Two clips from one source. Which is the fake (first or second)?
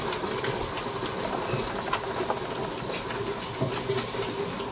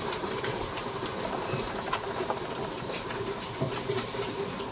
second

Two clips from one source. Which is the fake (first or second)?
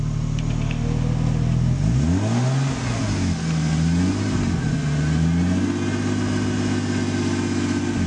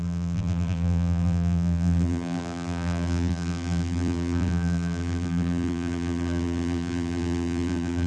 second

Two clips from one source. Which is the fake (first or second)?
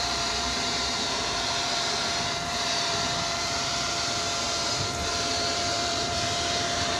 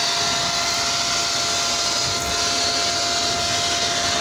first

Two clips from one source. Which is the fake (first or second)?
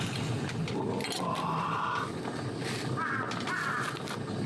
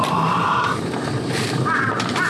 second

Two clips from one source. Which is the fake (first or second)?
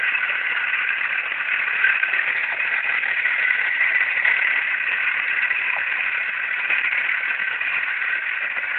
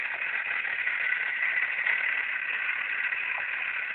first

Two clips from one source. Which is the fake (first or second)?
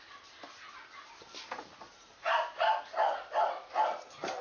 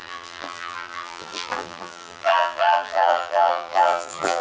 second